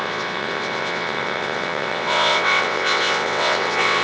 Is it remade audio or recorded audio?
remade